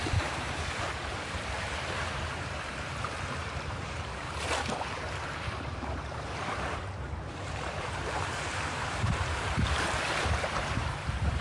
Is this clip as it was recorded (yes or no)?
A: no